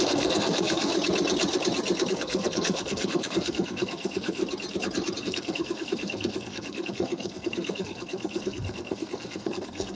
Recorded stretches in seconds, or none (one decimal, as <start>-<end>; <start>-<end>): 0.9-2.1; 4.4-5.2